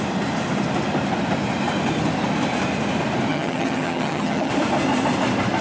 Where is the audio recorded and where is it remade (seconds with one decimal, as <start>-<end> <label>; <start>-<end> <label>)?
0.0-3.3 recorded; 3.3-4.5 remade; 4.5-5.6 recorded